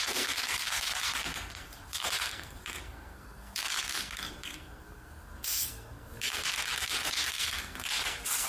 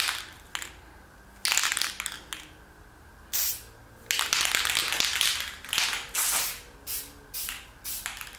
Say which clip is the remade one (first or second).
first